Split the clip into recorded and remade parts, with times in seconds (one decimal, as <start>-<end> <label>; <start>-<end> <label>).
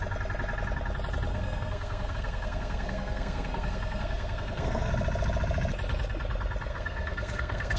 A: 0.0-1.3 recorded; 1.3-4.9 remade; 4.9-6.7 recorded; 6.7-7.8 remade